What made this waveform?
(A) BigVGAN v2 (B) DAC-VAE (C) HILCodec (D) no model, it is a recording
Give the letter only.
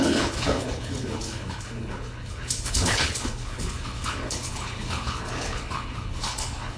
C